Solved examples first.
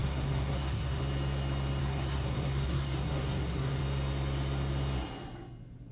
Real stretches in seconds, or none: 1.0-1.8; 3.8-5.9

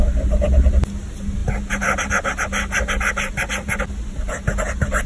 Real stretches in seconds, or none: 0.0-5.1

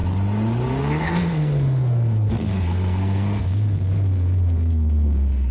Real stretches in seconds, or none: 0.0-0.8

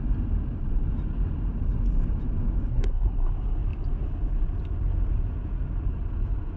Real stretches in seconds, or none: 0.0-2.7; 3.3-6.6

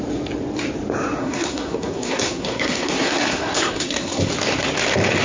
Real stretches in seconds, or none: 0.0-1.2; 4.3-5.2